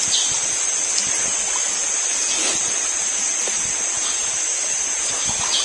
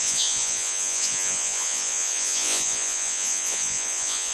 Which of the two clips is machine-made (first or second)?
second